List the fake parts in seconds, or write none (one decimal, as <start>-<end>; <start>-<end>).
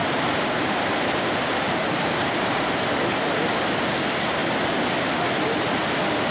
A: 0.0-3.1